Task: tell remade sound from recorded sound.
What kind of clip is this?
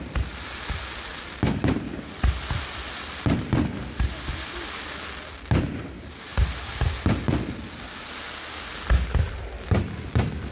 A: recorded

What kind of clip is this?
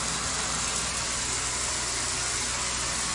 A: recorded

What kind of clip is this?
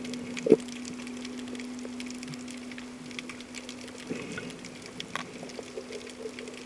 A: recorded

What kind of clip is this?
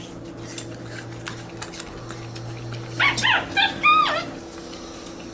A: recorded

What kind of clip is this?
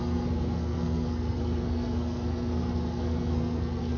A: remade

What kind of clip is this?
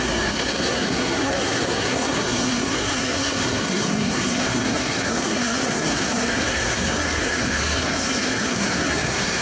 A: remade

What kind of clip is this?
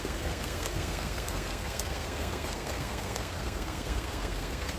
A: remade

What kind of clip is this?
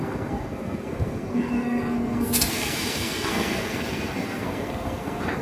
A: remade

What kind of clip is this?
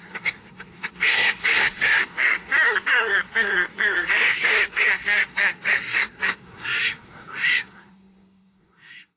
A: remade